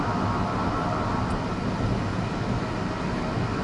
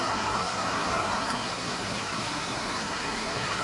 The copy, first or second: second